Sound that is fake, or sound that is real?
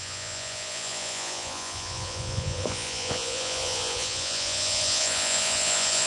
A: fake